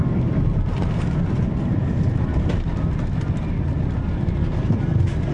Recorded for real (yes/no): yes